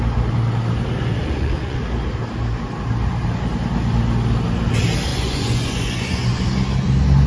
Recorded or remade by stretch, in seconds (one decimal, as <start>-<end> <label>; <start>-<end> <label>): 0.0-1.2 recorded; 1.2-1.8 remade; 1.8-5.1 recorded; 5.1-6.4 remade; 6.4-7.3 recorded